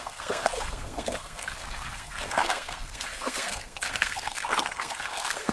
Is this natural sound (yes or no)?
no